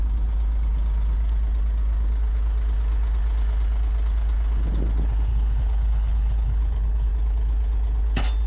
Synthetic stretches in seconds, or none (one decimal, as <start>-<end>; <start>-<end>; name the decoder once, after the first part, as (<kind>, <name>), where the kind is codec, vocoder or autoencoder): 5.3-7.1 (codec, HILCodec)